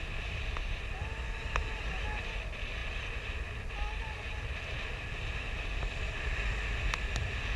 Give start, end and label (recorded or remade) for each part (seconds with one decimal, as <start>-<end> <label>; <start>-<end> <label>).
0.0-7.6 recorded